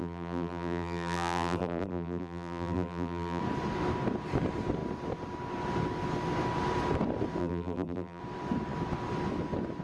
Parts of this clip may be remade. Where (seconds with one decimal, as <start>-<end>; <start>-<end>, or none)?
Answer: 0.0-3.4; 7.4-8.2